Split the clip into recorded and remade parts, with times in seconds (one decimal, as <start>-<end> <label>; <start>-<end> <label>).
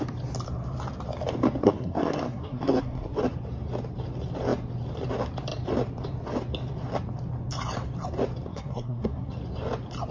0.0-1.6 recorded; 1.6-3.2 remade; 3.2-8.5 recorded; 8.5-9.3 remade; 9.3-10.1 recorded